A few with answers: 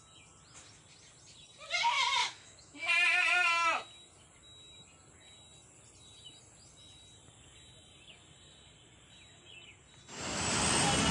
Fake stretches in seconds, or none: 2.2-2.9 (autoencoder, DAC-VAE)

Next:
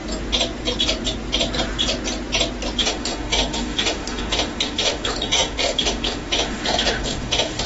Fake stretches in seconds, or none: 2.8-7.7 (autoencoder, DAC-VAE)

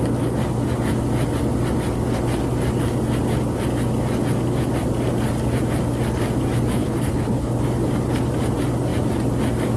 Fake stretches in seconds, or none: 6.7-7.5 (codec, HILCodec)

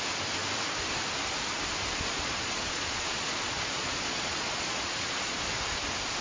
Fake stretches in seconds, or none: 2.1-5.4 (vocoder, Vocos)